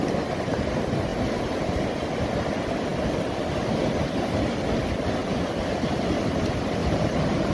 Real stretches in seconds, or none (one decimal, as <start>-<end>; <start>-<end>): 0.0-1.1; 1.9-6.8